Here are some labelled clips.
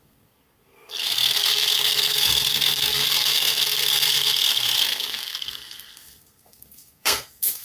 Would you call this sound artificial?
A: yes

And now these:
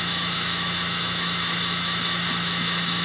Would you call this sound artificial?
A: yes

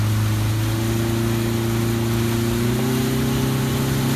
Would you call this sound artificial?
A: no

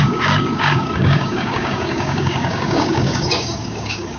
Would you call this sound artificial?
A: yes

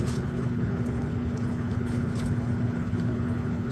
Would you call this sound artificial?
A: yes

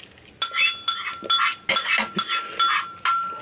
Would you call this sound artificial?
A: no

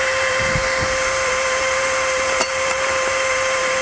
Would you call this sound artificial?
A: yes